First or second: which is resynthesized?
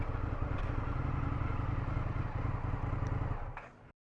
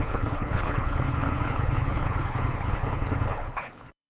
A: second